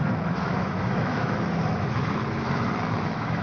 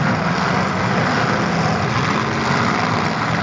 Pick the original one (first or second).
second